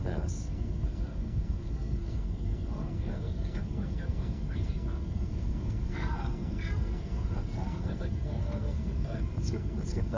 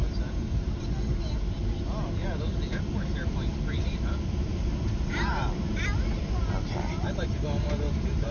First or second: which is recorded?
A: second